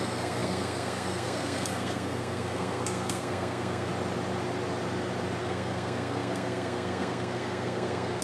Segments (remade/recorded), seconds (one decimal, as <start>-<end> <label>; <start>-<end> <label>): 0.0-3.9 remade; 3.9-5.4 recorded; 5.4-8.2 remade